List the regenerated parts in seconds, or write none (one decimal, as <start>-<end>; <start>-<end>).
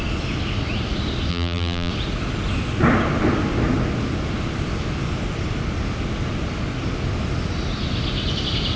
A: 1.3-1.9